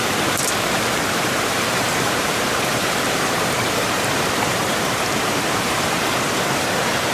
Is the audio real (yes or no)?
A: no